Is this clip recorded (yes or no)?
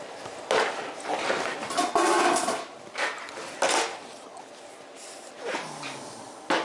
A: yes